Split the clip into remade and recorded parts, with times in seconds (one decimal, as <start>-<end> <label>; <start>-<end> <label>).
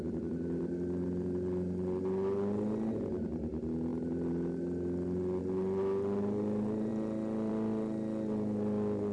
0.0-9.1 recorded